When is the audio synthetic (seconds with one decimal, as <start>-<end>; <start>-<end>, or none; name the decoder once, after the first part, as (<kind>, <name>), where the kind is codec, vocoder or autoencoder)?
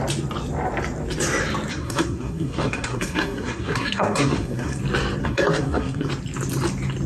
1.7-4.8 (codec, SNAC); 5.2-6.1